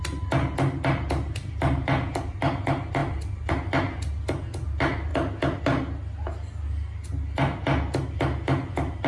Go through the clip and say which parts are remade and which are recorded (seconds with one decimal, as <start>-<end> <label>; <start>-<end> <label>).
0.0-9.1 recorded